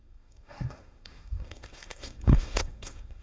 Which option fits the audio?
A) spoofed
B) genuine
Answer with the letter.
A